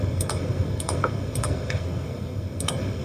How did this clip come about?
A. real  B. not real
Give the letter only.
B